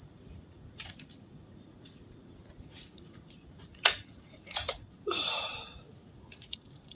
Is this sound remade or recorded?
remade